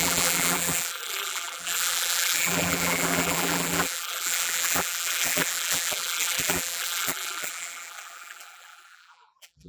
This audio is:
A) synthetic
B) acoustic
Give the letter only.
A